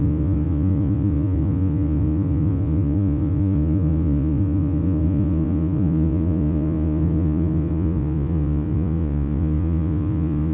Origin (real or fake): fake